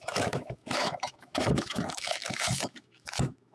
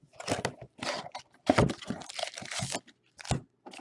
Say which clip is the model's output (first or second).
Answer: first